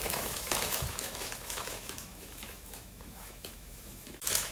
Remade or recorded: remade